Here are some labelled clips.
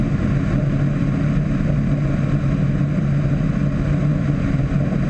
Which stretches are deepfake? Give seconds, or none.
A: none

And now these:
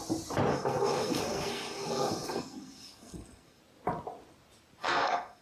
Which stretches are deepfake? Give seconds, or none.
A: 0.5-3.6 (codec, SNAC); 4.8-5.4

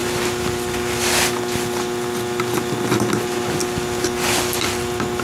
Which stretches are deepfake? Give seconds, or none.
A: none

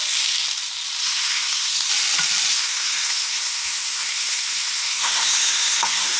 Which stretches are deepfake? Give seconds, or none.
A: 1.0-1.9 (codec, SNAC); 2.5-6.2

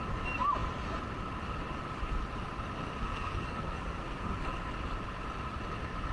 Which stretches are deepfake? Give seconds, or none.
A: 3.0-4.4 (codec, SNAC)

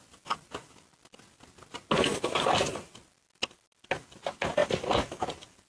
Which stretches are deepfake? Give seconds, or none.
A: none

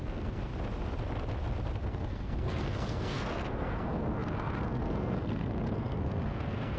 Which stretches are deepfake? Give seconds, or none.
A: 0.0-0.5 (codec, SNAC); 1.7-6.8